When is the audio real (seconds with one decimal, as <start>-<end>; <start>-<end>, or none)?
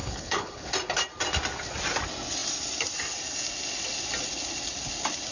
0.7-5.3